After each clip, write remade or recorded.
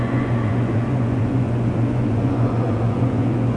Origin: remade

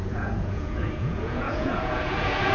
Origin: remade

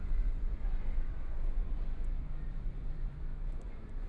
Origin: remade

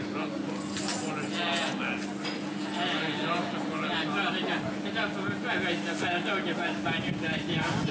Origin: recorded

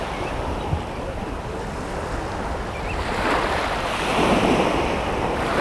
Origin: recorded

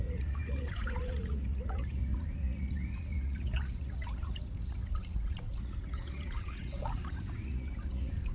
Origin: remade